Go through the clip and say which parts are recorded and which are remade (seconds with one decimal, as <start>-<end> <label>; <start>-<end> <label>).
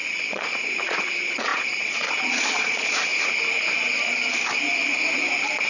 0.0-3.1 remade; 3.1-5.7 recorded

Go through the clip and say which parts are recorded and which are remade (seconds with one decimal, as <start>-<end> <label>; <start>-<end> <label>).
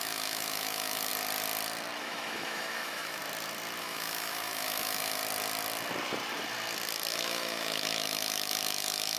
0.0-1.1 remade; 1.1-2.0 recorded; 2.0-3.2 remade; 3.2-3.8 recorded; 3.8-5.2 remade; 5.2-7.1 recorded; 7.1-9.2 remade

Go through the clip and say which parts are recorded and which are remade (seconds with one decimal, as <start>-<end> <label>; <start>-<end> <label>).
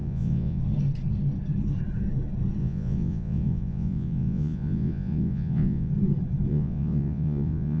0.0-0.6 remade; 0.6-2.6 recorded; 2.6-5.9 remade; 5.9-6.5 recorded; 6.5-7.8 remade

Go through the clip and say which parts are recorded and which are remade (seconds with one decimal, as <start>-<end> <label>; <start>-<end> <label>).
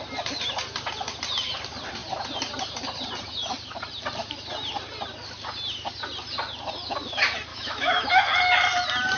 0.0-7.5 recorded; 7.5-8.2 remade; 8.2-9.2 recorded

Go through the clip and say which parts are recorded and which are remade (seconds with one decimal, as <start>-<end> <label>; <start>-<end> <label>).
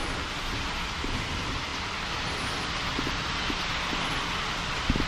0.0-5.1 recorded